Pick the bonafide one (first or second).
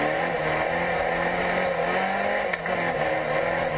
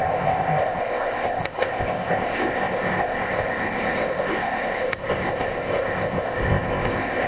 first